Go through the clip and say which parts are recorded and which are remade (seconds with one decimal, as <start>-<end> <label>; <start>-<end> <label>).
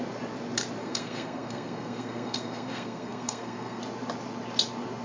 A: 0.0-0.8 recorded; 0.8-3.8 remade; 3.8-5.0 recorded